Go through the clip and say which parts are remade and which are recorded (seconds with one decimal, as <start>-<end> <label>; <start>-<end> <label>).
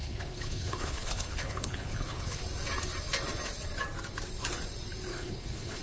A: 0.0-2.4 remade; 2.4-5.1 recorded; 5.1-5.8 remade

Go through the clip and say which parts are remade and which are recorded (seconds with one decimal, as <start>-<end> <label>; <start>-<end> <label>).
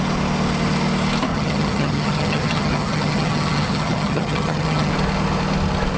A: 0.0-1.3 recorded; 1.3-4.9 remade; 4.9-6.0 recorded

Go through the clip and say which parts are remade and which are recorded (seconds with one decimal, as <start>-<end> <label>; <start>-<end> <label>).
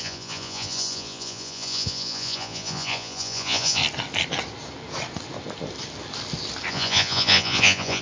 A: 0.0-3.8 remade; 3.8-6.7 recorded; 6.7-8.0 remade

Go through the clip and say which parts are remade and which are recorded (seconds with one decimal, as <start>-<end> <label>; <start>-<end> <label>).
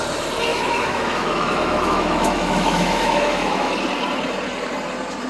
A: 0.0-0.5 recorded; 0.5-3.7 remade; 3.7-5.3 recorded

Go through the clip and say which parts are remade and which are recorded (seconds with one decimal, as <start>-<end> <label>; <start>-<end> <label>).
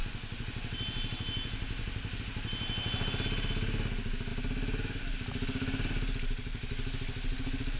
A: 0.0-7.8 recorded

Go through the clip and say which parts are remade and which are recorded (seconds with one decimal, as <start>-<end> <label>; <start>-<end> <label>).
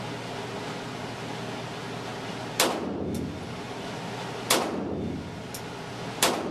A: 0.0-6.5 recorded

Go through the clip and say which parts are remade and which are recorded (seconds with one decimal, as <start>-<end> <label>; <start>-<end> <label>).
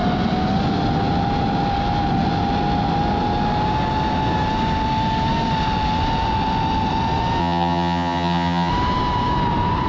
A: 0.0-7.4 recorded; 7.4-8.7 remade; 8.7-9.9 recorded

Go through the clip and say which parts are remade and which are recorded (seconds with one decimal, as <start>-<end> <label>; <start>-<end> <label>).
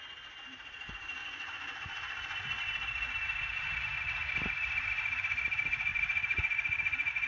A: 0.0-5.9 remade; 5.9-7.3 recorded